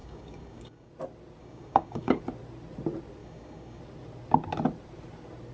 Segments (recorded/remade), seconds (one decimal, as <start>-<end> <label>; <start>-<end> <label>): 0.0-0.9 remade; 0.9-1.4 recorded; 1.4-2.2 remade; 2.2-3.2 recorded; 3.2-3.8 remade; 3.8-5.5 recorded